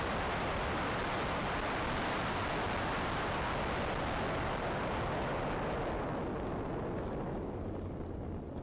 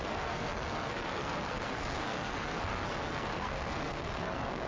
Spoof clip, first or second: second